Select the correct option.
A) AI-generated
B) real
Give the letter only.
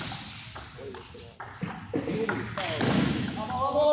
B